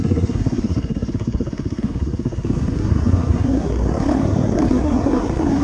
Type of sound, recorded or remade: remade